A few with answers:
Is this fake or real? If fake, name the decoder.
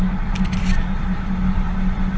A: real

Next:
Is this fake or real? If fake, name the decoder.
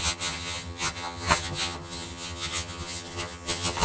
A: fake, vocoder, HiFi-GAN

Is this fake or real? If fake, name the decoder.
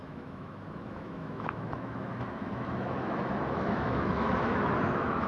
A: fake, autoencoder, DAC-VAE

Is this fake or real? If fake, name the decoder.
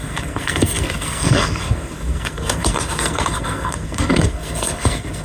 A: fake, codec, SNAC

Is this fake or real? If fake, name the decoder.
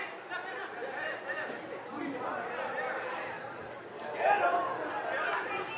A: real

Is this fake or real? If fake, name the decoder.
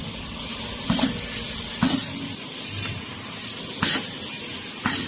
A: real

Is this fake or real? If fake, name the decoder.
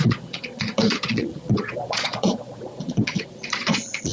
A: fake, vocoder, Vocos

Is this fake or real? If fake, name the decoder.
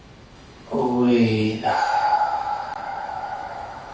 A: fake, autoencoder, DAC-VAE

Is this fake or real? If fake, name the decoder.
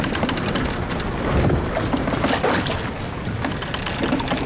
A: real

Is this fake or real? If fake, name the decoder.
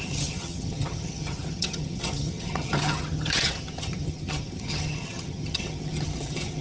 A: fake, vocoder, HiFi-GAN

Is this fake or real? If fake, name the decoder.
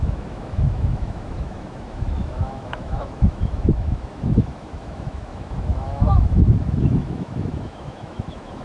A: fake, autoencoder, DAC-VAE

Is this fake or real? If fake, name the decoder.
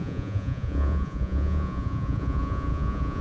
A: fake, vocoder, Vocos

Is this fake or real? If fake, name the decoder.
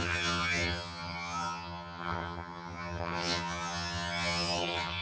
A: fake, vocoder, HiFi-GAN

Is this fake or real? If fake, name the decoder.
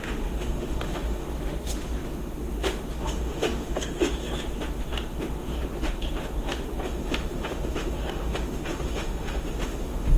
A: fake, autoencoder, DAC-VAE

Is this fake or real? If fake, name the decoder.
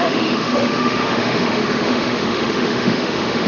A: fake, autoencoder, DAC-VAE